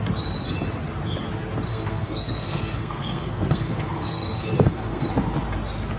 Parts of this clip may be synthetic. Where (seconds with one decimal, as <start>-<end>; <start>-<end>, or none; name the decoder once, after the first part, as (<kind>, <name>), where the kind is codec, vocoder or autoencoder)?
1.7-5.1 (codec, SNAC)